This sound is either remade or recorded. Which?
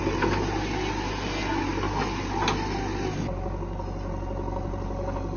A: recorded